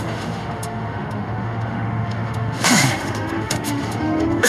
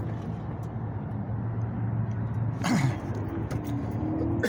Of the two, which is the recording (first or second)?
second